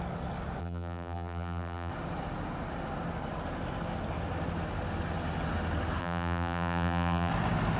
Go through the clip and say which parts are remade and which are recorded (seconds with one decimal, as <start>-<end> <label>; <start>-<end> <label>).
0.0-0.6 recorded; 0.6-1.9 remade; 1.9-6.0 recorded; 6.0-7.3 remade; 7.3-7.8 recorded